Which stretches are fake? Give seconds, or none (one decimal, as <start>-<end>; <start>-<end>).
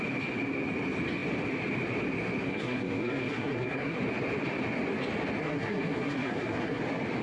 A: 2.5-4.0; 5.4-6.8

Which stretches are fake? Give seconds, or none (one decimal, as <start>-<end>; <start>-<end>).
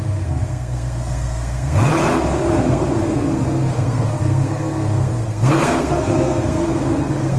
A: 0.0-1.9; 2.5-7.4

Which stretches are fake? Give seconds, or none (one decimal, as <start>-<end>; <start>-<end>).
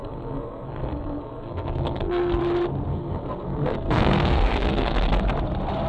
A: 0.0-2.4; 2.9-5.2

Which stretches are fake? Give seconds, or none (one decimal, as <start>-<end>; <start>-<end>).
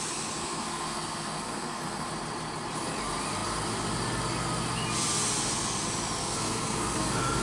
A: 0.4-2.1; 6.2-7.4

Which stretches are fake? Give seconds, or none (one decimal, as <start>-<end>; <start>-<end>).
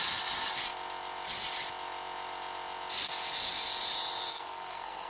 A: 4.3-5.1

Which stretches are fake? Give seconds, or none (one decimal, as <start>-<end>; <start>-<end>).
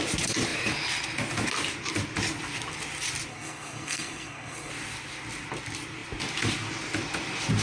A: 3.3-4.7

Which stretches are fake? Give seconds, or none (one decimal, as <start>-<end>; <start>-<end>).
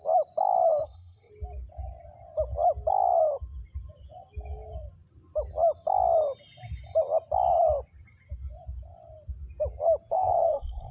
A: 0.8-1.3; 10.1-10.9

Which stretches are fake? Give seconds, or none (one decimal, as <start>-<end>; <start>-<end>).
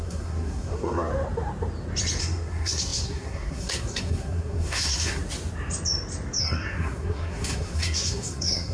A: 0.0-1.1; 2.2-5.2; 6.4-8.7